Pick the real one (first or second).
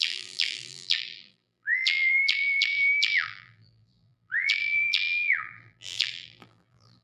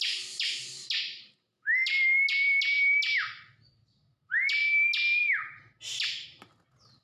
second